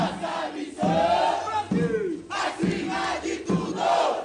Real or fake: real